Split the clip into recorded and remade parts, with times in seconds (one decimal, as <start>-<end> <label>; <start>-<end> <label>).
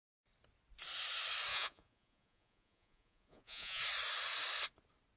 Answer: 0.0-1.5 recorded; 1.5-3.8 remade; 3.8-5.2 recorded